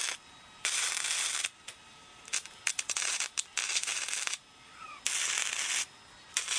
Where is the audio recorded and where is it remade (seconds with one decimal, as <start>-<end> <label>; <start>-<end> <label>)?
0.0-6.6 recorded